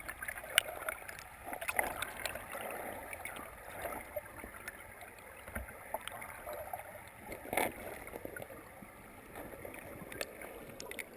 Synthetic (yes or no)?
no